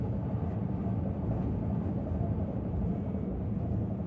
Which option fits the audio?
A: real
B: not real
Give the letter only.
A